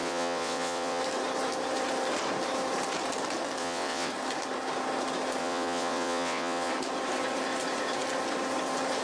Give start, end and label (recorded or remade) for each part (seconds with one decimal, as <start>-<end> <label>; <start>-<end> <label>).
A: 0.0-1.0 remade; 1.0-3.6 recorded; 3.6-4.1 remade; 4.1-5.4 recorded; 5.4-6.7 remade; 6.7-9.0 recorded